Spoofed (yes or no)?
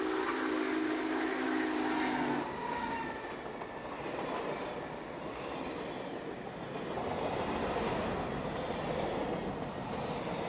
no